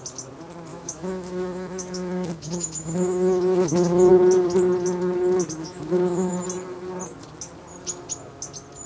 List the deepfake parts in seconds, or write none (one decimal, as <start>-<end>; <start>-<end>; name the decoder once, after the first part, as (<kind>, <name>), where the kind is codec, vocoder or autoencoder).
0.7-4.1 (autoencoder, DAC-VAE); 5.6-6.3